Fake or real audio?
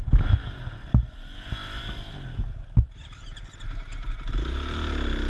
real